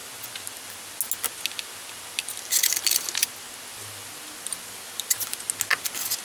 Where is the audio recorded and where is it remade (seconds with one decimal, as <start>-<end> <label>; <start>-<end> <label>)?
0.0-6.2 recorded